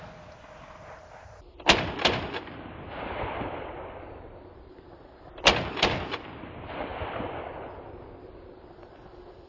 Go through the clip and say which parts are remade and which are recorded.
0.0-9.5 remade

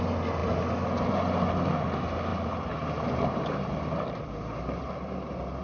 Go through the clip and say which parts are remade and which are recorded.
0.0-2.3 recorded; 2.3-3.7 remade; 3.7-5.6 recorded

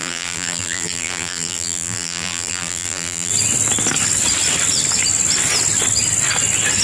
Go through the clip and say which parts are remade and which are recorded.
0.0-3.3 remade; 3.3-6.8 recorded